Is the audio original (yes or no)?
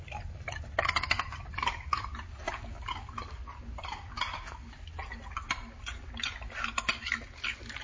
yes